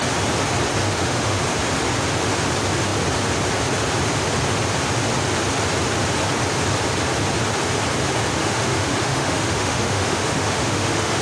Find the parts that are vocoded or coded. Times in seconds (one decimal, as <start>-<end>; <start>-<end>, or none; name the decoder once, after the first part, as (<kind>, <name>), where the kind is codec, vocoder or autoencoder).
0.8-1.4 (autoencoder, DAC-VAE); 8.4-11.2